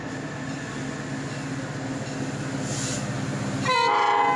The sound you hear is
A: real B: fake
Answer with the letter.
A